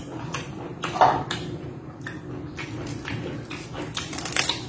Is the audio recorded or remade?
remade